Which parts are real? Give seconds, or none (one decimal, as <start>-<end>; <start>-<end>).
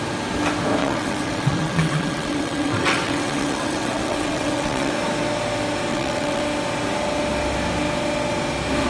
0.0-0.8; 4.9-5.9; 6.4-8.9